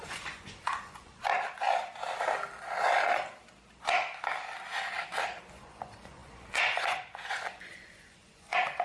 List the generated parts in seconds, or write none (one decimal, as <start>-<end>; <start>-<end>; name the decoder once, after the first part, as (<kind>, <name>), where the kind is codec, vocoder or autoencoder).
0.0-1.3 (vocoder, Vocos); 5.5-8.8